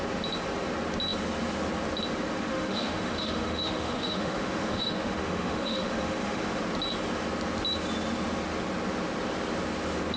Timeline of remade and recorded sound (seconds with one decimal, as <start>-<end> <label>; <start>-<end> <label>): 0.0-2.5 recorded; 2.5-6.6 remade; 6.6-10.2 recorded